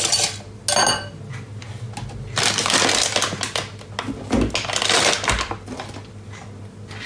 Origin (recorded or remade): recorded